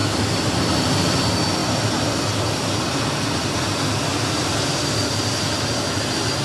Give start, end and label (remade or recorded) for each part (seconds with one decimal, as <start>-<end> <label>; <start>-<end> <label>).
0.0-6.4 recorded